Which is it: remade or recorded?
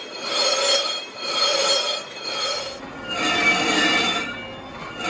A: recorded